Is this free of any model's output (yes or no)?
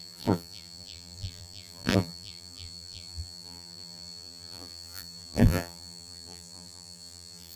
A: no